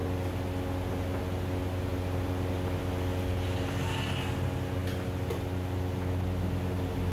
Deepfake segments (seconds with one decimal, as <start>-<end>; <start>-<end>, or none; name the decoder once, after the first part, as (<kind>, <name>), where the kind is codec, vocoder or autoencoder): none